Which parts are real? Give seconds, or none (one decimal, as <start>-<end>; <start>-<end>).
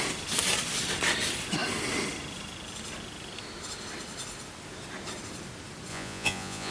0.0-5.9